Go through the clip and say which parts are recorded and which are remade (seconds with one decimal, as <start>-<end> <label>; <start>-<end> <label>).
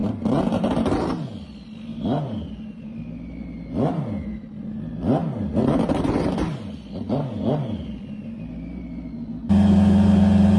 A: 0.0-10.6 recorded